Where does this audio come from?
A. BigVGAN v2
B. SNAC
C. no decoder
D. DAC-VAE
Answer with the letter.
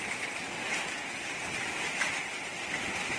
C